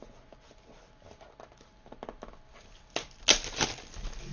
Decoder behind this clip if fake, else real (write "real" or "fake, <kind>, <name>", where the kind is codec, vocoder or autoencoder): real